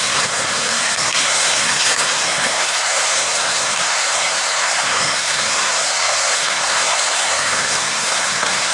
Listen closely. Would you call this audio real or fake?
fake